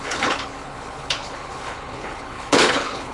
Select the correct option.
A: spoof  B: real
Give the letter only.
A